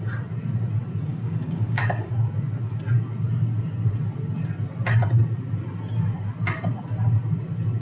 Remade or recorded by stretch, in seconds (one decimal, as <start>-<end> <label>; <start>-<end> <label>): 0.0-1.1 recorded; 1.1-2.1 remade; 2.1-7.8 recorded